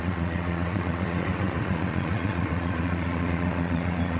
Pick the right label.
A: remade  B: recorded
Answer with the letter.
A